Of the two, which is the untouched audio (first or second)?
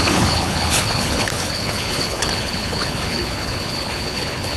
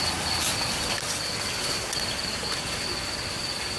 second